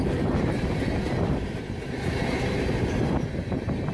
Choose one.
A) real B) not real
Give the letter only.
B